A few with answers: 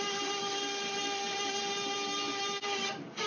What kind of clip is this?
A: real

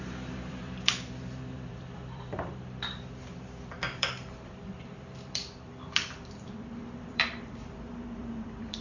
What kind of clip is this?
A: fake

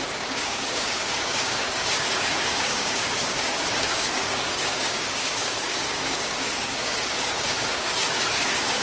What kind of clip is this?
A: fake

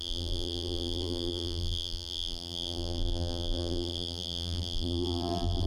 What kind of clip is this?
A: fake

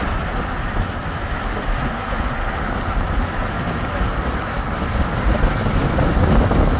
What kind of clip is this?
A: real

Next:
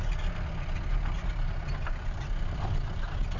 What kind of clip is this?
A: real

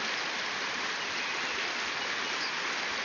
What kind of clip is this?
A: real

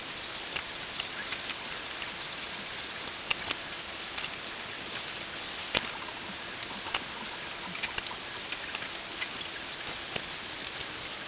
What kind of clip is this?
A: real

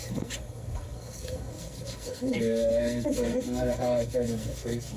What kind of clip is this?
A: fake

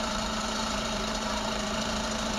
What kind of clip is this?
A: fake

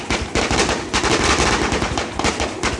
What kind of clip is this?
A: real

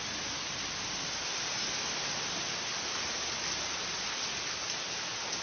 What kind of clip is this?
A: real